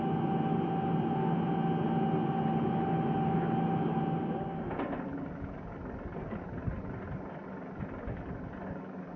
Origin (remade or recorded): recorded